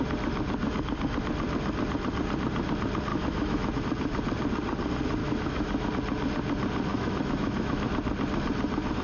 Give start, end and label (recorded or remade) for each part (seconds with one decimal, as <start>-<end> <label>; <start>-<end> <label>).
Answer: 0.0-3.1 recorded; 3.1-3.8 remade; 3.8-5.2 recorded; 5.2-5.9 remade; 5.9-6.9 recorded; 6.9-7.9 remade; 7.9-9.0 recorded